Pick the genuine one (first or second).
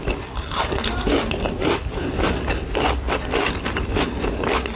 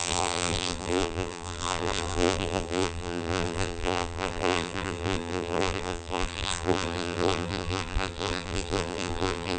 first